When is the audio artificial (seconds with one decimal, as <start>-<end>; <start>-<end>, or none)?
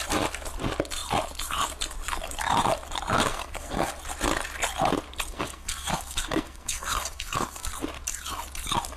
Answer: 3.3-3.9; 5.3-7.7